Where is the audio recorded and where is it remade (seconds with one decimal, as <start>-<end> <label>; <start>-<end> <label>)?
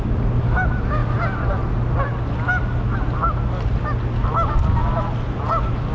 0.0-5.9 recorded